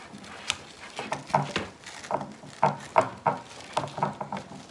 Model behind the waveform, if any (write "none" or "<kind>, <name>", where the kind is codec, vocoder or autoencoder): none